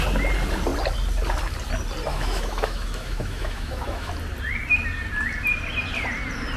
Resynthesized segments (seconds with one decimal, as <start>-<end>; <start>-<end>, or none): 2.1-4.1